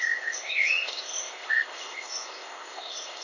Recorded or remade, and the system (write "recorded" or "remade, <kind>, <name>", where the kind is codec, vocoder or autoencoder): remade, codec, ZipCodec